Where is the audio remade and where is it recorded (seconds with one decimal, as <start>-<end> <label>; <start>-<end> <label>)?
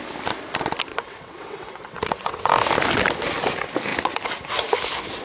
0.0-0.9 recorded; 0.9-2.5 remade; 2.5-5.2 recorded